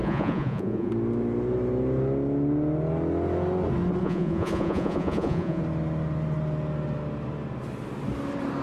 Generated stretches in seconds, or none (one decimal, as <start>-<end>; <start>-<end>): 0.0-0.9; 4.0-5.6